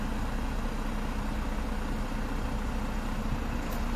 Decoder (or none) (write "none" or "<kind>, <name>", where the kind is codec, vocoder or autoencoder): none